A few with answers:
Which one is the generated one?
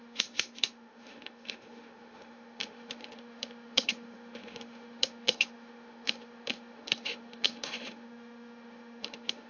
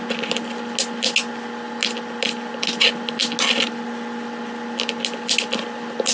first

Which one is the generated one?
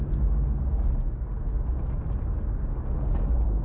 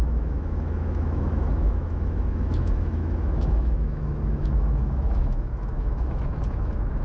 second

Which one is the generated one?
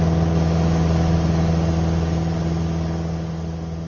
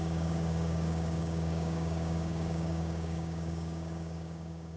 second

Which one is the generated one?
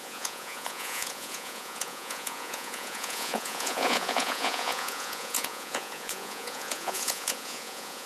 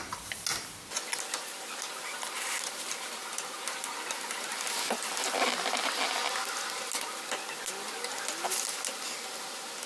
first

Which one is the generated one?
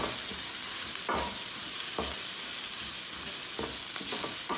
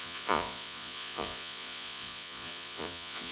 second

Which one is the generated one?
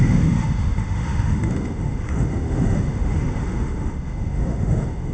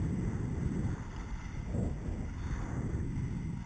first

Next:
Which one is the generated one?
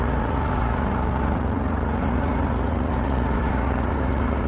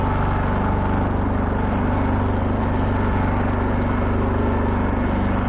first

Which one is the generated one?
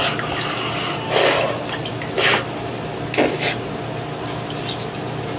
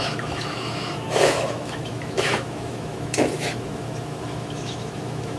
second